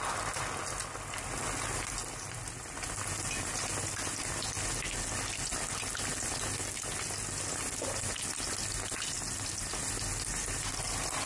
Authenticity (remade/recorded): recorded